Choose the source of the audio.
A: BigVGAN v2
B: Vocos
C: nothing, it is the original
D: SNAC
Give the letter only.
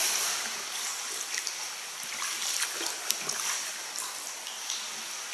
C